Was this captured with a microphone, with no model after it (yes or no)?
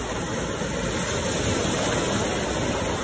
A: yes